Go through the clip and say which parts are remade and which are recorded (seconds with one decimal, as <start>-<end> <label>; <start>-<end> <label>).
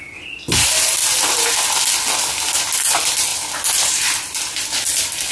0.0-5.3 recorded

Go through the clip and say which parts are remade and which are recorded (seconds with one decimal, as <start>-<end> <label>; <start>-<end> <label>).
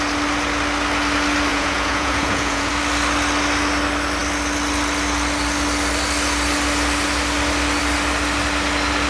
0.0-1.5 recorded; 1.5-2.7 remade; 2.7-9.1 recorded